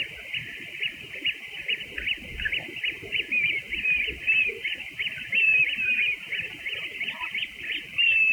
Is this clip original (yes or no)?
no